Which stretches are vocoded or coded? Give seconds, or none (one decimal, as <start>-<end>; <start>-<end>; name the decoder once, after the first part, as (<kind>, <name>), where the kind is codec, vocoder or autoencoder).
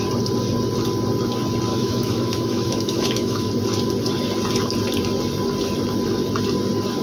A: 1.7-3.5 (autoencoder, DAC-VAE)